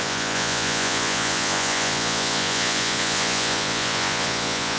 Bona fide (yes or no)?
no